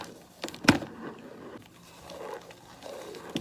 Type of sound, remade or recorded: recorded